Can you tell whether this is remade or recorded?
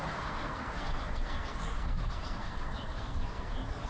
remade